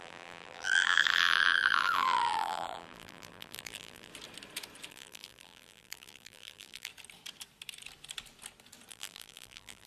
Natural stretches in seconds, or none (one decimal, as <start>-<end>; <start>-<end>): 4.1-4.9; 6.9-8.9